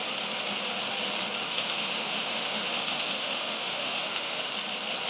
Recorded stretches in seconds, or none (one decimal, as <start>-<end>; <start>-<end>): 0.0-1.4; 4.5-5.1